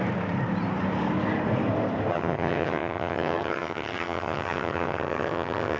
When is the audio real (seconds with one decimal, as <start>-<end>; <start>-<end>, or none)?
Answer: 0.0-2.1